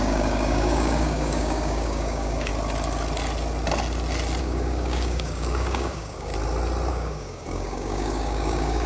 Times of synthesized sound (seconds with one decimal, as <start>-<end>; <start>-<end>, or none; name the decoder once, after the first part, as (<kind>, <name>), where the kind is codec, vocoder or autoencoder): 0.0-2.5 (codec, DAC); 4.4-6.3; 6.9-8.9